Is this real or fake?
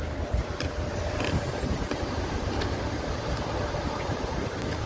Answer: fake